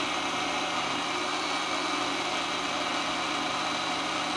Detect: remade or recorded recorded